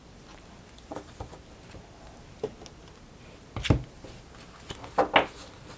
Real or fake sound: real